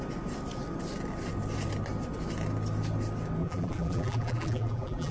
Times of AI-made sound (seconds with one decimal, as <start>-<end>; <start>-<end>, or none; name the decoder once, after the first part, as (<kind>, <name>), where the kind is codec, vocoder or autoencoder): 3.4-5.1 (vocoder, BigVGAN v2)